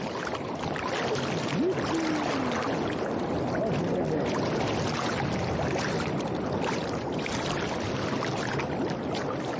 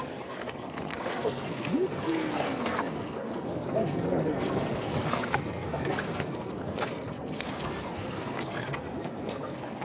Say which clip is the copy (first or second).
second